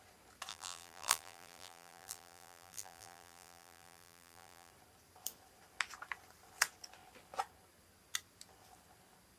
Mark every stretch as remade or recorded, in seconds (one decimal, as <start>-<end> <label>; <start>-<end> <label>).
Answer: 0.0-0.5 recorded; 0.5-4.7 remade; 4.7-9.4 recorded